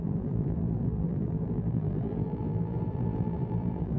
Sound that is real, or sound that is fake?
fake